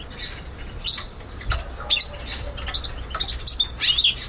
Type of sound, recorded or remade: recorded